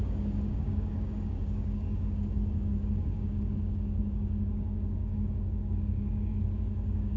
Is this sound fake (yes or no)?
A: yes